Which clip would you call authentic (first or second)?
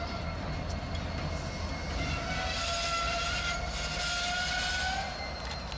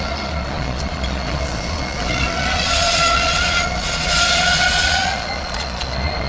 first